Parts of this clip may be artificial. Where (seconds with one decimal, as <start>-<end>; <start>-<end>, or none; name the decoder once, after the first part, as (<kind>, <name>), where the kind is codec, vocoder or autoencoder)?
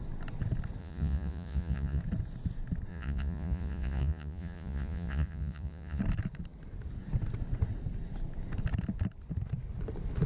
0.8-2.0 (vocoder, Vocos); 2.9-6.0